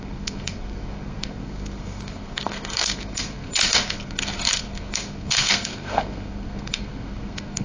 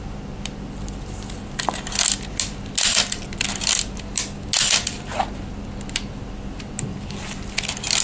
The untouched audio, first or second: second